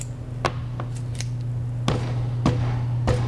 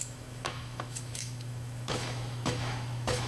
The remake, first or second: second